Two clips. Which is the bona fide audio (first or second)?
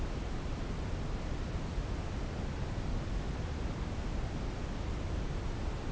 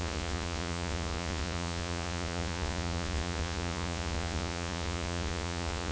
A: first